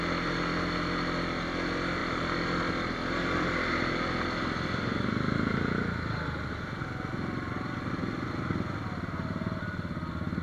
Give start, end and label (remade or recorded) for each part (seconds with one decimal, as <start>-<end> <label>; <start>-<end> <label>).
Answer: 0.0-10.4 recorded